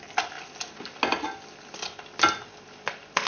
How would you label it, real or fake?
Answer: real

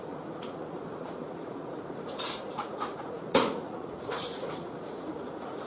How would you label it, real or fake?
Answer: fake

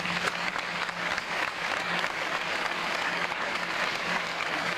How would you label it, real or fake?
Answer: fake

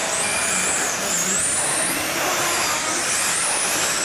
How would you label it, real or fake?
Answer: real